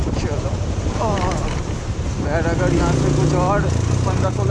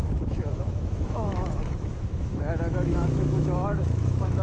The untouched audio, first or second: first